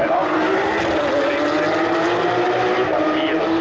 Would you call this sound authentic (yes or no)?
yes